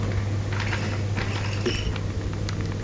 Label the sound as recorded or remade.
recorded